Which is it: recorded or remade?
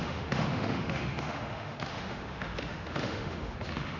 remade